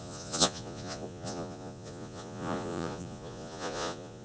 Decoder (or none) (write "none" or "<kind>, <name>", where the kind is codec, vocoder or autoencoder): vocoder, Vocos